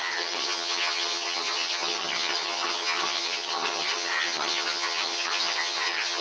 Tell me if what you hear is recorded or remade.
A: remade